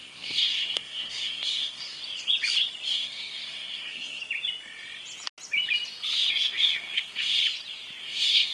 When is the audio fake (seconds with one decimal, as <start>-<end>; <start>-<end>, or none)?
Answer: 0.0-2.0; 2.9-4.2; 6.3-7.4; 8.0-8.5